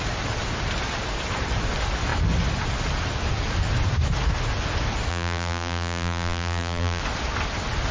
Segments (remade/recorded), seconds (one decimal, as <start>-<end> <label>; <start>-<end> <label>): 0.0-5.1 recorded; 5.1-7.0 remade; 7.0-7.9 recorded